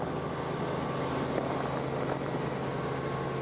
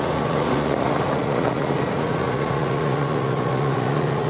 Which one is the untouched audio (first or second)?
first